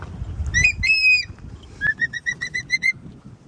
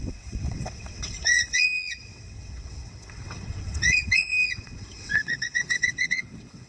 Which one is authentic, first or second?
first